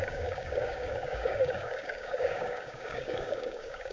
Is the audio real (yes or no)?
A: no